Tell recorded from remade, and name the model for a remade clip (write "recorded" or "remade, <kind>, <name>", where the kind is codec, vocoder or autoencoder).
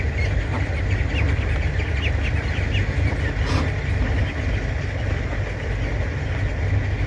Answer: recorded